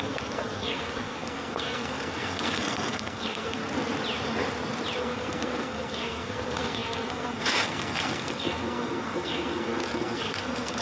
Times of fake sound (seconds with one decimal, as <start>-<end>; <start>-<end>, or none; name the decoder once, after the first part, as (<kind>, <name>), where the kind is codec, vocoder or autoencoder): 0.0-3.6 (codec, SNAC); 5.0-10.8